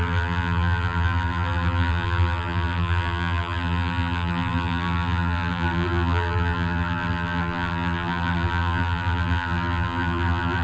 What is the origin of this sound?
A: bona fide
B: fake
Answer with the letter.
B